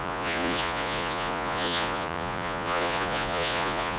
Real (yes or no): no